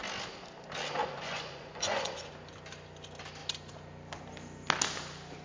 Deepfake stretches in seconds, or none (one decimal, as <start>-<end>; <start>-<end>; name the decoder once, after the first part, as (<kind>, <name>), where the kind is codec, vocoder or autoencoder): 1.0-2.3 (vocoder, Vocos)